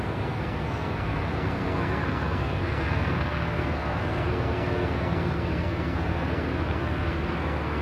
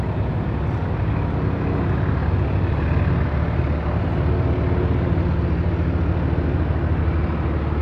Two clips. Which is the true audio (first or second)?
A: second